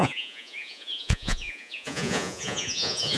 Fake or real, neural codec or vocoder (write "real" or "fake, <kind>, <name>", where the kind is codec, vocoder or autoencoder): fake, vocoder, Vocos